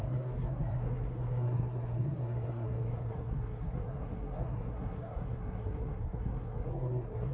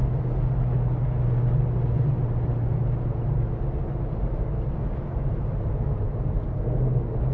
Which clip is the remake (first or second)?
first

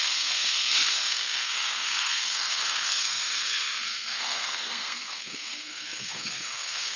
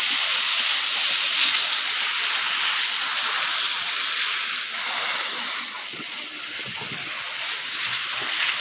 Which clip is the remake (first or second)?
first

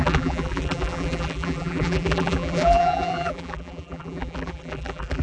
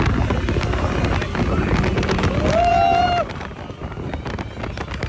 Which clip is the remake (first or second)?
first